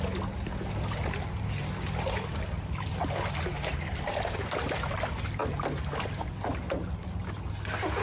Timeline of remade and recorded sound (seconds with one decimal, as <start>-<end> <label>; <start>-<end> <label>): 0.0-8.0 recorded